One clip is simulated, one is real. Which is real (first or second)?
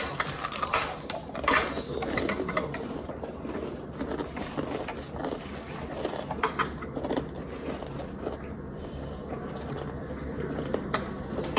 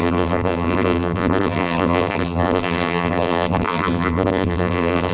first